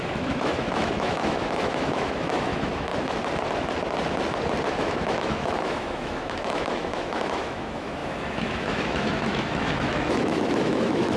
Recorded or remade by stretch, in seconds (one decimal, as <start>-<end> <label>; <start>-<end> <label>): 0.0-2.9 remade; 2.9-4.8 recorded; 4.8-11.2 remade